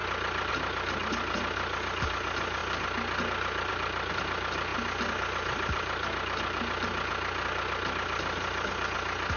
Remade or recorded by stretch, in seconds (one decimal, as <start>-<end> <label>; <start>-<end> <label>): 0.0-9.4 recorded